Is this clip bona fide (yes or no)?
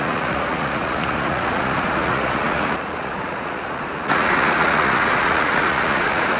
no